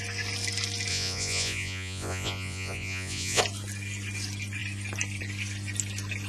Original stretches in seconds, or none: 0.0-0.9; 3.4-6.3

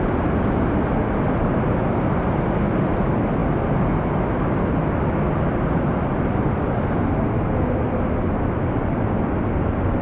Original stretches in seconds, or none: 0.0-10.0

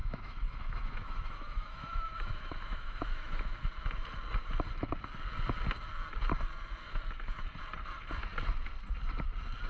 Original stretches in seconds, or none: 3.4-9.7